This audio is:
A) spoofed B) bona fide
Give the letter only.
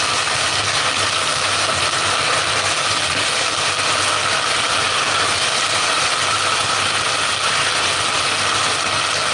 B